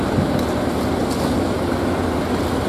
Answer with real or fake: real